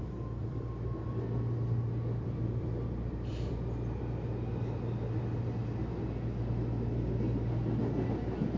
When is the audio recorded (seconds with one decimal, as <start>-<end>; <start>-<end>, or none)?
0.0-0.4; 4.0-8.6